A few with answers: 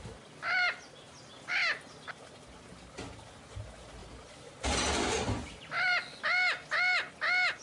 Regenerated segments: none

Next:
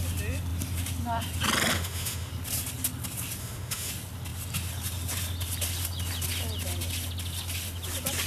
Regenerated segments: 1.7-2.3 (autoencoder, DAC-VAE); 3.4-3.9

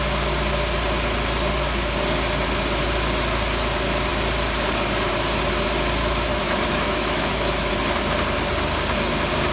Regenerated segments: 6.3-7.7 (autoencoder, DAC-VAE)

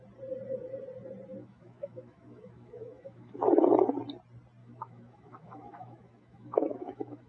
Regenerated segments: 1.4-3.5 (autoencoder, DAC-VAE); 4.6-7.3

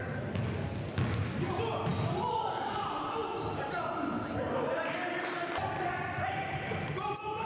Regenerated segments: none